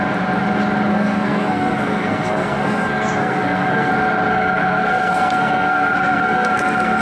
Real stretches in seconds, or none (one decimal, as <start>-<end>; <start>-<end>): 0.0-0.9; 3.9-4.3